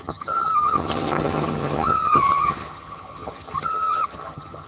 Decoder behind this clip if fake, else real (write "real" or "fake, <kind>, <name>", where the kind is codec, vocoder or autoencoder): fake, vocoder, HiFi-GAN